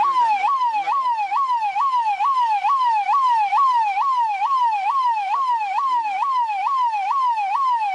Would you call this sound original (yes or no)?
yes